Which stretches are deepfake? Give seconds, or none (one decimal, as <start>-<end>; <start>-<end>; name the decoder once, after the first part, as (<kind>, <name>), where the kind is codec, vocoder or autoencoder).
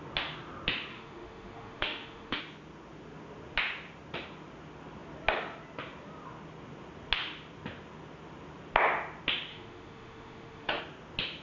0.9-2.4 (autoencoder, DAC-VAE); 9.5-10.8